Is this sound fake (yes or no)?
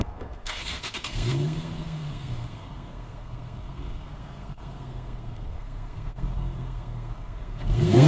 yes